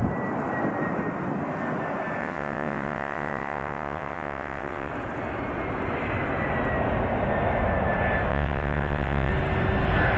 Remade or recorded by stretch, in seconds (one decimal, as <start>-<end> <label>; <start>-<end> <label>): 0.0-2.2 recorded; 2.2-4.9 remade; 4.9-8.3 recorded; 8.3-9.3 remade; 9.3-10.2 recorded